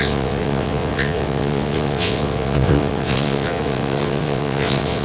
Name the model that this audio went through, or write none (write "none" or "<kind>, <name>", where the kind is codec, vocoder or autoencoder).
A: vocoder, WaveNeXt